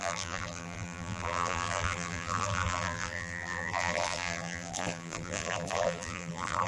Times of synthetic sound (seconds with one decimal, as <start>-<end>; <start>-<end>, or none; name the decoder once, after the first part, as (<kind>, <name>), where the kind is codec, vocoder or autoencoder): 0.0-6.7 (vocoder, BigVGAN v2)